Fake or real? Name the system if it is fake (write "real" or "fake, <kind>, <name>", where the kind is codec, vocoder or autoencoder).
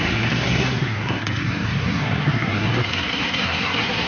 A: fake, codec, SNAC